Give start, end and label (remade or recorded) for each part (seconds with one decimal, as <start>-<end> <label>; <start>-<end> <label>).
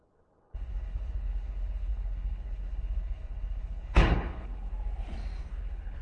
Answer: 0.0-4.7 remade; 4.7-5.5 recorded; 5.5-6.0 remade